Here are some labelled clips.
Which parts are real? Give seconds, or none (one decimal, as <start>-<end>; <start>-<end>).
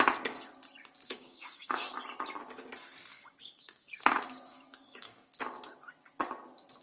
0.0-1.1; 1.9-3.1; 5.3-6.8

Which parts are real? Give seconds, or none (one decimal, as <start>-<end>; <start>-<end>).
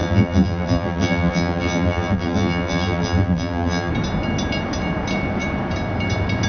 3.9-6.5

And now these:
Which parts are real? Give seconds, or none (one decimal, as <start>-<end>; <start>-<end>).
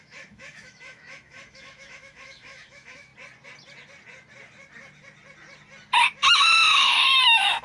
3.1-6.3